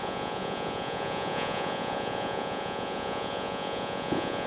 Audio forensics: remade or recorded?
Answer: remade